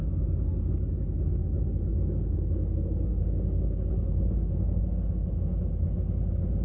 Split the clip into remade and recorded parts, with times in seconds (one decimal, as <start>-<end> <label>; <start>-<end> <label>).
0.0-1.9 recorded; 1.9-4.8 remade; 4.8-6.6 recorded